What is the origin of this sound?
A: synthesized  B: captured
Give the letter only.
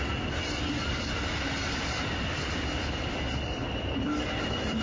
B